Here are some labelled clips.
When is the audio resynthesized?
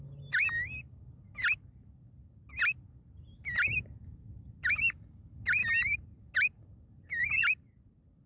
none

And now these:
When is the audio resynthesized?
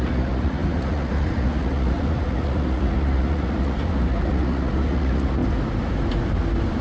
0.0-5.4 (vocoder, Vocos)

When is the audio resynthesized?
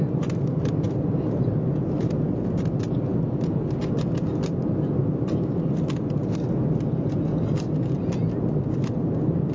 none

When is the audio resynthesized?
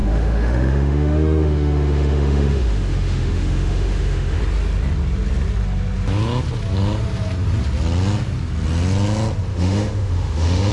0.0-4.4 (autoencoder, DAC-VAE); 9.5-10.7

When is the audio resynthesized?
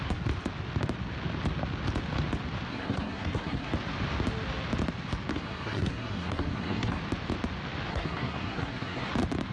2.7-3.7 (codec, SNAC); 5.3-7.0; 7.9-9.1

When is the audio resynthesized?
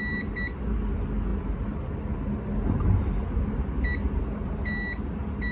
none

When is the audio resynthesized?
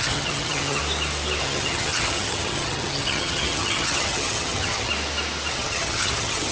0.0-0.8 (vocoder, HiFi-GAN); 1.4-4.9; 5.5-6.5